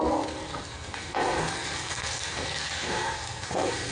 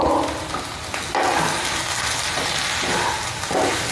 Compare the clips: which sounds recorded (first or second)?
second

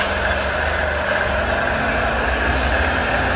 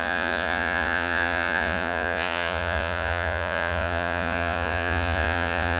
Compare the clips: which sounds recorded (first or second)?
first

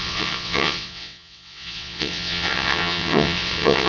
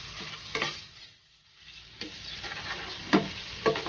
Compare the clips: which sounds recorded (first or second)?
second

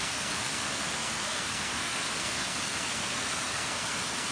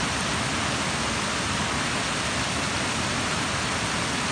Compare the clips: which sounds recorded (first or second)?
second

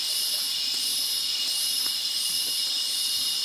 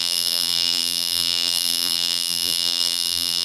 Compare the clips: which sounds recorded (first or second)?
first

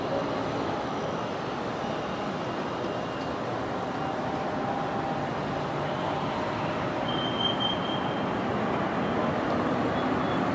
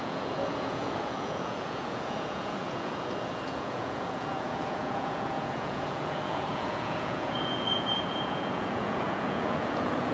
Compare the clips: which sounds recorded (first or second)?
first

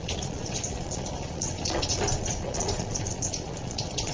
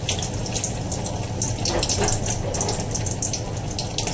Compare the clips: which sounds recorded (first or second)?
second